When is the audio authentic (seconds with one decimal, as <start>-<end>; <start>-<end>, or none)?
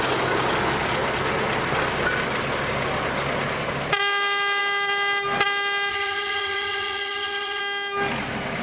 0.0-5.9; 7.6-8.6